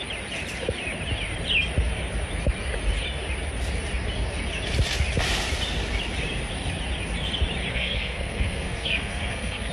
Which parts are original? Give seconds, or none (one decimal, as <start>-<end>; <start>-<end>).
0.0-7.7